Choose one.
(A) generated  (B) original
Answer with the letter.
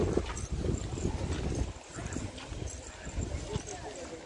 B